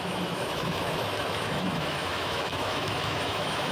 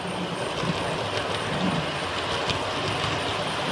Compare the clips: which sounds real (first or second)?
second